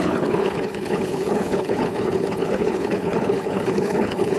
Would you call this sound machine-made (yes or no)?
yes